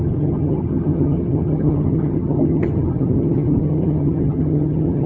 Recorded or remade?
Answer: remade